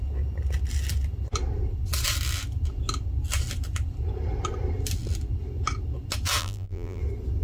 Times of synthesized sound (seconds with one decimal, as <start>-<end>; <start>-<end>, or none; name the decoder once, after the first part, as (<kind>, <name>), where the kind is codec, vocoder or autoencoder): 6.4-7.0 (vocoder, BigVGAN v2)